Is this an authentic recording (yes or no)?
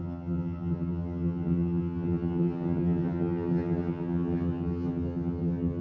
no